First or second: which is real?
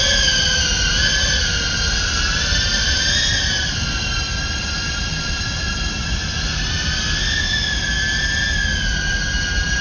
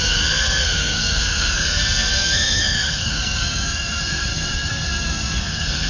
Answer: first